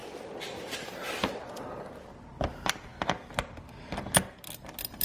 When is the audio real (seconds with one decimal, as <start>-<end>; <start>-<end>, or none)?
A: 0.0-5.0